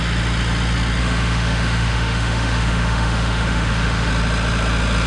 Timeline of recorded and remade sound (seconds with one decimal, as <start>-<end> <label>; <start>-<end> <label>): 0.0-1.0 recorded; 1.0-4.1 remade; 4.1-5.1 recorded